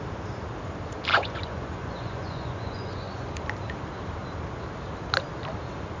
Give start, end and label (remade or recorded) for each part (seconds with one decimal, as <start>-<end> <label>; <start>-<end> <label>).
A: 0.0-1.1 recorded; 1.1-3.3 remade; 3.3-6.0 recorded